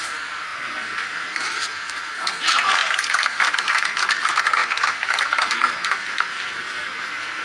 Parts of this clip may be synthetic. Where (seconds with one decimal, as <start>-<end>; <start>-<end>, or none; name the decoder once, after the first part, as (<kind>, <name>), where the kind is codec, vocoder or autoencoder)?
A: 0.0-7.4 (codec, SNAC)